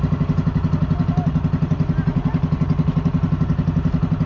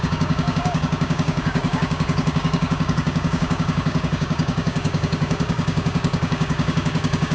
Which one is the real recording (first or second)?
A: first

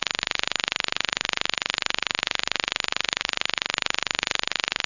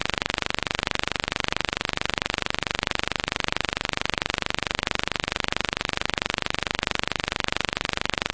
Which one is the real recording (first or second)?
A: second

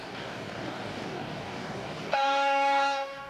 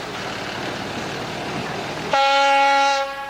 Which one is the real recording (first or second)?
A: second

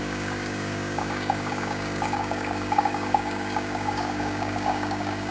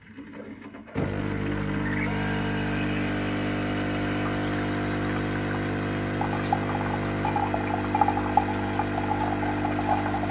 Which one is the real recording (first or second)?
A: second